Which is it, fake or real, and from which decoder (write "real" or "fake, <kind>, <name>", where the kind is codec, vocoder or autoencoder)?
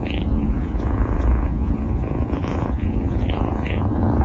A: fake, vocoder, Vocos